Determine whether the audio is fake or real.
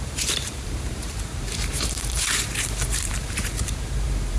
fake